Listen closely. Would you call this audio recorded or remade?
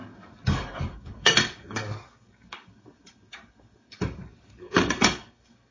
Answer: remade